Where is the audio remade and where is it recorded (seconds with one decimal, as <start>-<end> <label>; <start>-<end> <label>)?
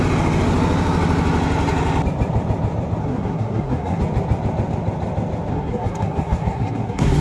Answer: 0.0-3.0 recorded; 3.0-4.0 remade; 4.0-5.5 recorded; 5.5-7.2 remade